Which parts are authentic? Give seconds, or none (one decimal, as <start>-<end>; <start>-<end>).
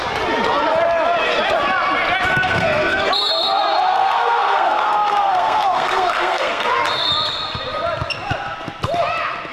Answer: 0.0-2.3; 3.1-3.9; 6.7-9.5